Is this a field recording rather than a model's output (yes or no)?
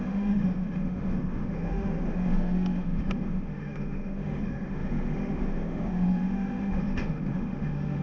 no